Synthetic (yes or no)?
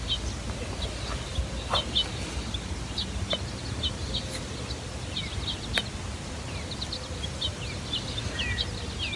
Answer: no